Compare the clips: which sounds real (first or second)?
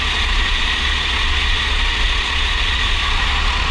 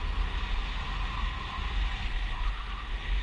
second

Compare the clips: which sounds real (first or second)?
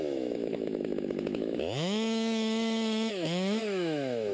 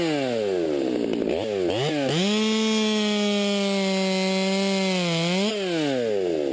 second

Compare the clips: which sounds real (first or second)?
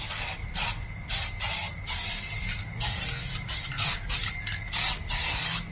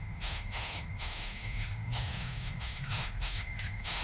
first